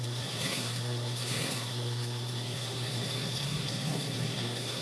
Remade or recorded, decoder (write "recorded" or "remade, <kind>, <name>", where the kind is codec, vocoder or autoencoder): remade, codec, SNAC